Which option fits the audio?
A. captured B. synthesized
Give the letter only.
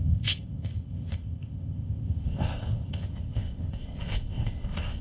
B